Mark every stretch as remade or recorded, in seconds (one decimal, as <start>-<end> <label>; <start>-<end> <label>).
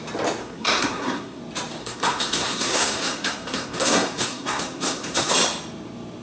0.0-0.4 recorded; 0.4-1.4 remade; 1.4-1.8 recorded; 1.8-5.3 remade; 5.3-6.2 recorded